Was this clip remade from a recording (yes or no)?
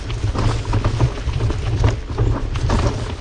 no